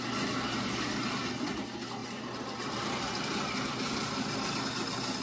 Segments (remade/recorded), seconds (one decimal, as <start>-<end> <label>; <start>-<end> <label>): 0.0-2.0 recorded; 2.0-3.7 remade; 3.7-5.2 recorded